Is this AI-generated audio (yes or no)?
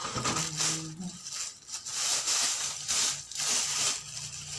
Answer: no